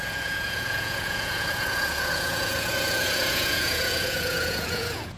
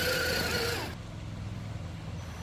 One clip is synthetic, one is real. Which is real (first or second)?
second